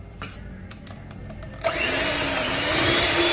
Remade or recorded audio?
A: recorded